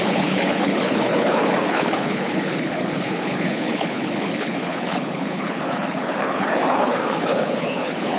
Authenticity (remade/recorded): remade